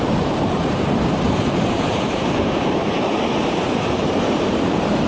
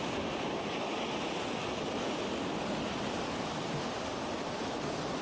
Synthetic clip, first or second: first